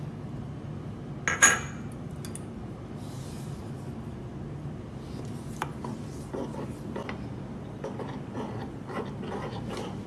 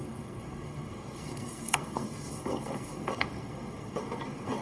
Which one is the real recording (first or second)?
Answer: first